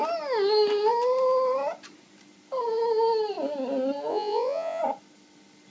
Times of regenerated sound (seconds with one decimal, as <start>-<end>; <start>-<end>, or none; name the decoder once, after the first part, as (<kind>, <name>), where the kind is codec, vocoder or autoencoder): 4.1-4.8 (vocoder, Vocos)